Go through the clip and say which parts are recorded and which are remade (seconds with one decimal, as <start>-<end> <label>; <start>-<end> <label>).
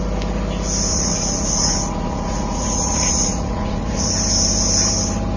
0.0-0.9 recorded; 0.9-4.1 remade; 4.1-5.4 recorded